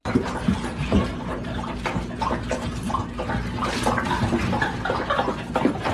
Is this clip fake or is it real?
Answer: fake